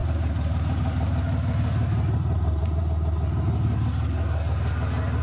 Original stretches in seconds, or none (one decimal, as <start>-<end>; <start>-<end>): 2.8-5.2